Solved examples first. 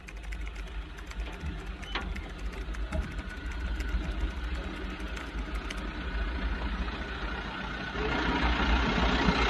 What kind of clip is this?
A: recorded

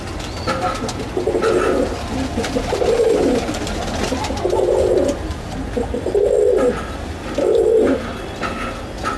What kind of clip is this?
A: recorded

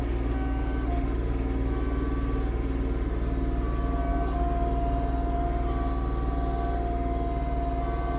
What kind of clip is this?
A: recorded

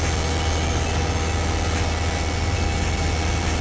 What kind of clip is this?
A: recorded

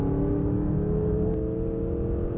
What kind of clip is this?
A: recorded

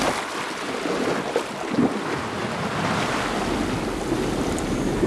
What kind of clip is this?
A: recorded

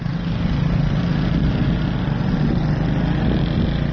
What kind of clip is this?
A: recorded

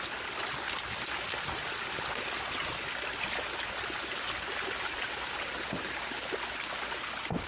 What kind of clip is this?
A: recorded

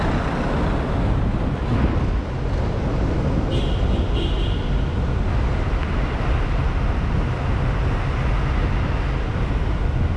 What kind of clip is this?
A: recorded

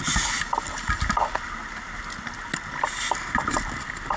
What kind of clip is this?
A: recorded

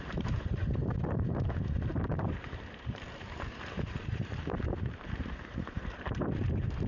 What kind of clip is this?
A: remade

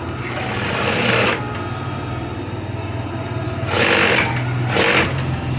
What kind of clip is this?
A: recorded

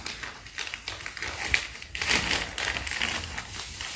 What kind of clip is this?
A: recorded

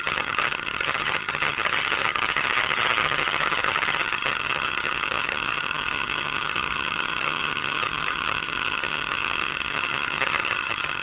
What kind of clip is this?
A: remade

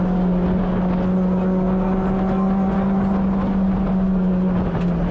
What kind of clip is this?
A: recorded